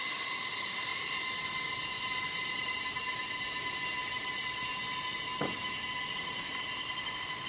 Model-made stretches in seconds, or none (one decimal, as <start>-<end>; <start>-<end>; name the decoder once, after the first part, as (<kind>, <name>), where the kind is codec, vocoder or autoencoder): none